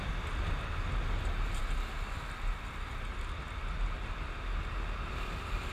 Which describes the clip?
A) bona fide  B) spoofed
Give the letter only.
A